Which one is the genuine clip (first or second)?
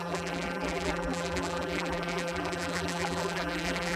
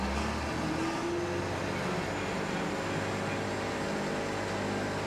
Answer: second